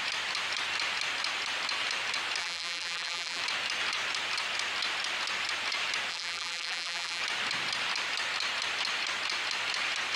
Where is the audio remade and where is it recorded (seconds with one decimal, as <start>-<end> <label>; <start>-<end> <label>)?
0.0-2.4 recorded; 2.4-3.4 remade; 3.4-6.1 recorded; 6.1-7.2 remade; 7.2-10.2 recorded